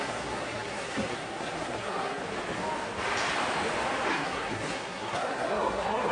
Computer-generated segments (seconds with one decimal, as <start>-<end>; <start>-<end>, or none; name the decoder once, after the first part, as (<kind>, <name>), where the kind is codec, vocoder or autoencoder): 0.0-2.2 (codec, SNAC); 4.1-6.1